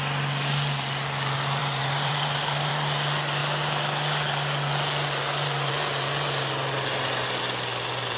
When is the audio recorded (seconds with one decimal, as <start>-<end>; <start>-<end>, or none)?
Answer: 0.0-1.6; 2.7-8.2